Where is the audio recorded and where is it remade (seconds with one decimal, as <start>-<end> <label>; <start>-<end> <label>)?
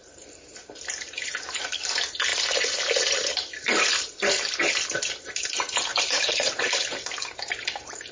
0.0-5.9 recorded; 5.9-8.1 remade